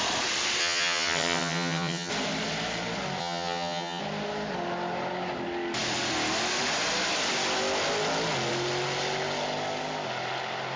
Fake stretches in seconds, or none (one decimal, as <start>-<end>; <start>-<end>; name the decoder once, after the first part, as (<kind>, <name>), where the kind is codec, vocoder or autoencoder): 0.6-2.1 (vocoder, HiFi-GAN); 3.2-4.0